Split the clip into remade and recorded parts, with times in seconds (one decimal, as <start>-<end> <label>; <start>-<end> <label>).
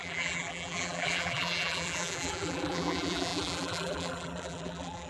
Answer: 0.0-5.1 remade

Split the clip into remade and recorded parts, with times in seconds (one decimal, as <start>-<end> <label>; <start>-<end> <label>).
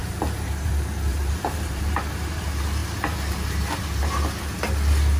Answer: 0.0-0.7 remade; 0.7-1.1 recorded; 1.1-2.0 remade; 2.0-5.2 recorded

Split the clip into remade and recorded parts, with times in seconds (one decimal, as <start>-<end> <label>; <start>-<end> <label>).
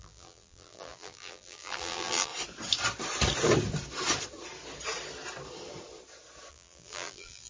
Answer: 0.0-2.3 remade; 2.3-6.5 recorded; 6.5-7.5 remade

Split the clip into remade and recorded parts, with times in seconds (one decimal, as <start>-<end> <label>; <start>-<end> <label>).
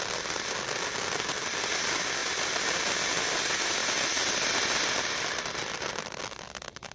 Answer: 0.0-2.2 recorded; 2.2-2.8 remade; 2.8-6.9 recorded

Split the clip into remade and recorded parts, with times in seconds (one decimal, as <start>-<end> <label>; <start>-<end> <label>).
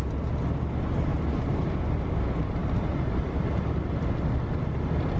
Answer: 0.0-1.1 recorded; 1.1-1.7 remade; 1.7-2.6 recorded; 2.6-3.6 remade; 3.6-5.2 recorded